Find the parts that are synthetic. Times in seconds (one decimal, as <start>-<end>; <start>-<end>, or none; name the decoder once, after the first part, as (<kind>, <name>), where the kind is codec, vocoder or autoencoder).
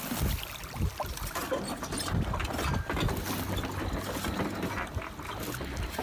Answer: none